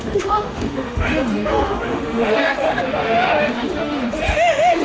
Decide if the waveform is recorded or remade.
remade